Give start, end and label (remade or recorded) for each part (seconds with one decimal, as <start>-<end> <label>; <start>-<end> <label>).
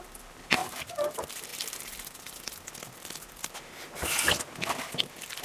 0.0-0.6 recorded; 0.6-1.1 remade; 1.1-5.4 recorded